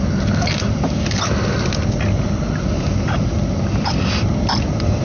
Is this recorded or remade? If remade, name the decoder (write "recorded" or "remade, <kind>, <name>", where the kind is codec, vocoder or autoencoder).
recorded